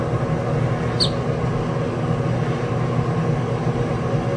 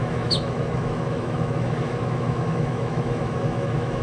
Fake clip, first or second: second